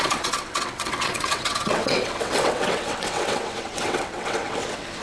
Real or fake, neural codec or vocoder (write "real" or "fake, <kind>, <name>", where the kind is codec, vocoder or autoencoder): fake, vocoder, WaveNeXt